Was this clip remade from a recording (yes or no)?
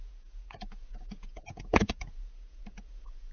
yes